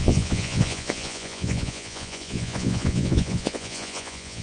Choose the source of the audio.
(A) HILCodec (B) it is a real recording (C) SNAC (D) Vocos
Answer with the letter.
D